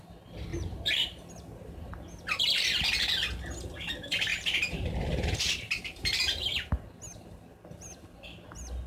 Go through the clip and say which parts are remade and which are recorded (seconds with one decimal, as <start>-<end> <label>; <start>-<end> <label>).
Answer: 0.0-0.5 recorded; 0.5-1.3 remade; 1.3-4.3 recorded; 4.3-6.7 remade; 6.7-8.9 recorded